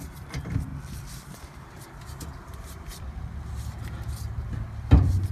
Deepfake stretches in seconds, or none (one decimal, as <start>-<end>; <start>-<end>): none